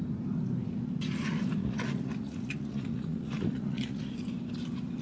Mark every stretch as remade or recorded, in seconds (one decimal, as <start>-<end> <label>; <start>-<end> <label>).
0.0-1.6 recorded; 1.6-4.1 remade; 4.1-5.0 recorded